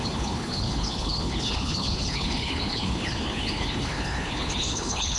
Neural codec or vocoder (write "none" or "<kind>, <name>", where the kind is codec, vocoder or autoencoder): codec, HILCodec